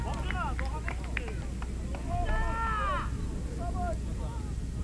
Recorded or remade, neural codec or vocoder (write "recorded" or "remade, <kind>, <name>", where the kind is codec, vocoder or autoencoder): recorded